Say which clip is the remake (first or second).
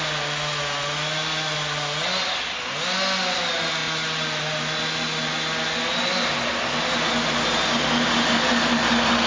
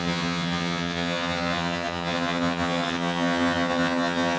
second